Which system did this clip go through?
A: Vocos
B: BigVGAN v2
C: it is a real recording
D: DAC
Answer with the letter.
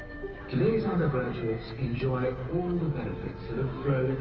D